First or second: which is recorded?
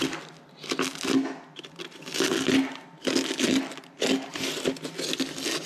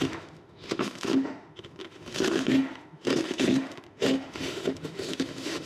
first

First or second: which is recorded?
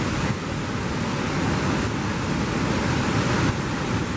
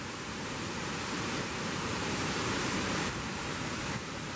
first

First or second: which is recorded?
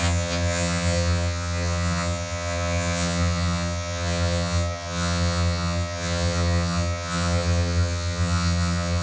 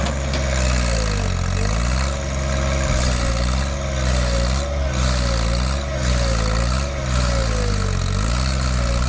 second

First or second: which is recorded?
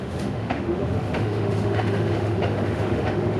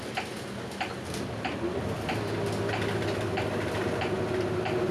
second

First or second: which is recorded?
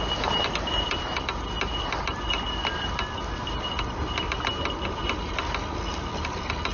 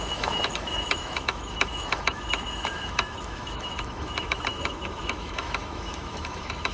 first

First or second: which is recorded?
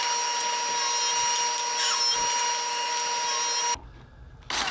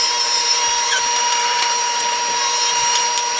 first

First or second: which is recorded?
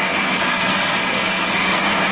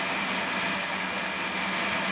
second